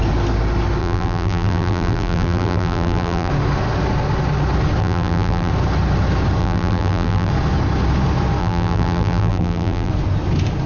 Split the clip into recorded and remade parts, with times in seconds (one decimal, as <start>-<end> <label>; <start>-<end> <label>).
0.0-0.8 recorded; 0.8-3.3 remade; 3.3-4.8 recorded; 4.8-5.5 remade; 5.5-6.4 recorded; 6.4-7.3 remade; 7.3-8.4 recorded; 8.4-9.9 remade; 9.9-10.7 recorded